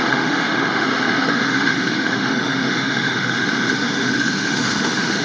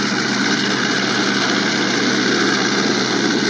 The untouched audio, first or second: second